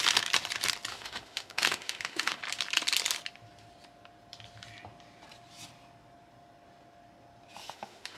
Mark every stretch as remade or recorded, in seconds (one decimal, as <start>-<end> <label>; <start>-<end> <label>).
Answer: 0.0-0.9 recorded; 0.9-2.4 remade; 2.4-7.6 recorded; 7.6-8.2 remade